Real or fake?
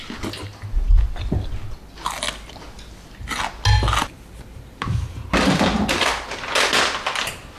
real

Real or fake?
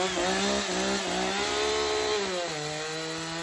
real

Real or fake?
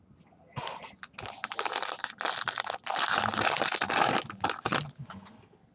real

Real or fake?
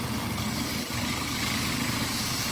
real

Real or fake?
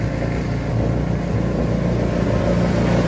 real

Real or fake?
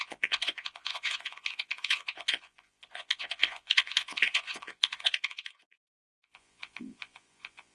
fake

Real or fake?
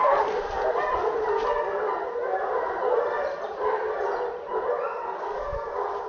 real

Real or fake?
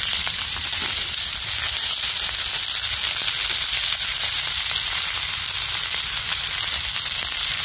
real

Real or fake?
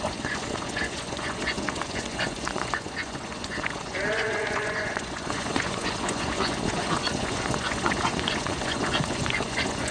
fake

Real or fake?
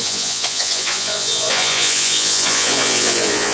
fake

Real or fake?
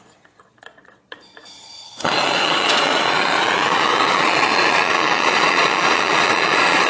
fake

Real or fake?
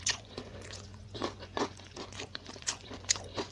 fake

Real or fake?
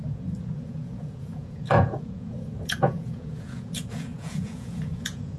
fake